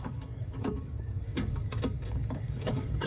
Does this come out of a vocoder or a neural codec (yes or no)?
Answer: yes